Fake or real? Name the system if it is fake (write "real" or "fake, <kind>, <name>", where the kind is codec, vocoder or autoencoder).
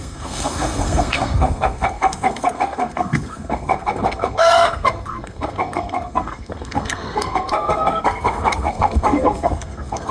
fake, codec, SNAC